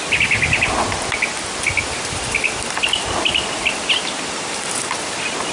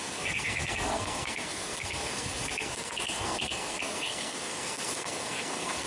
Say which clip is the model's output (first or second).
second